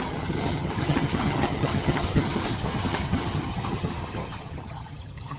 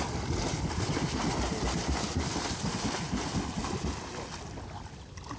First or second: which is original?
second